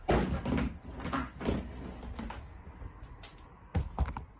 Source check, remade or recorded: recorded